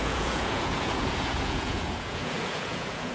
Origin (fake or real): fake